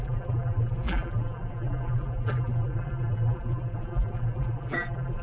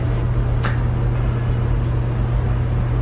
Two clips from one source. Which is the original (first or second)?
second